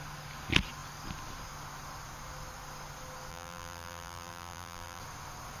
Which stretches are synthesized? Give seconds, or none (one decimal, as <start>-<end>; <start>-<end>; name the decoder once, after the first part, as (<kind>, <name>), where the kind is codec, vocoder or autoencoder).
3.3-5.0 (vocoder, BigVGAN v2)